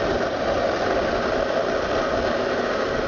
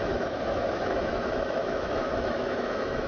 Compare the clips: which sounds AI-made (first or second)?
second